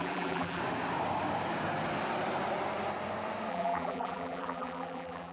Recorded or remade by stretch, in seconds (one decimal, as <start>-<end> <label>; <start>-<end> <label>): 0.0-0.6 remade; 0.6-3.5 recorded; 3.5-5.3 remade